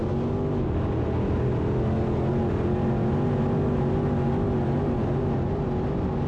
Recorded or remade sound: recorded